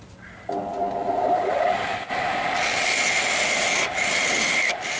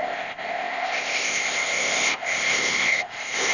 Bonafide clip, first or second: first